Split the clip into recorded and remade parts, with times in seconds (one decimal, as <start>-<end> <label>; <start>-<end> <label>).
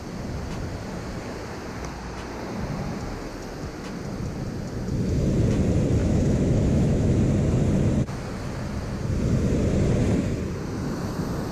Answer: 0.0-6.0 recorded; 6.0-7.2 remade; 7.2-11.5 recorded